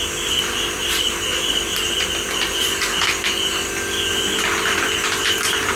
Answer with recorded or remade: recorded